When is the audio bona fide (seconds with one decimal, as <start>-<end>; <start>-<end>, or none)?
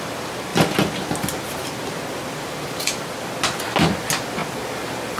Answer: 0.0-0.5; 3.6-5.2